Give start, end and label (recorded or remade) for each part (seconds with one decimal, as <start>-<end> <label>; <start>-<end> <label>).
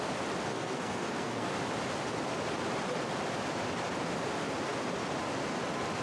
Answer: 0.0-0.5 recorded; 0.5-1.5 remade; 1.5-6.0 recorded